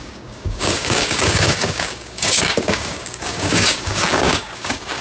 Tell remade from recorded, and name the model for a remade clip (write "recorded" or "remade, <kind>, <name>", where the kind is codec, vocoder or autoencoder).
remade, codec, DAC